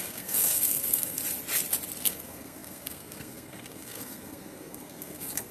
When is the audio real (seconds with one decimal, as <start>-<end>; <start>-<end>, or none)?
1.2-2.0